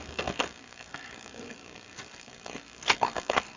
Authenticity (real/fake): fake